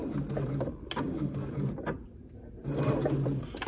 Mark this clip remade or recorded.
recorded